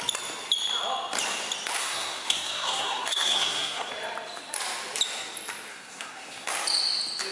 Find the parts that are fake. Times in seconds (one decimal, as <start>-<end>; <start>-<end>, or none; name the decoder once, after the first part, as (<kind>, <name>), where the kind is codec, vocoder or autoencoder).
1.8-3.9 (codec, SNAC); 5.7-6.5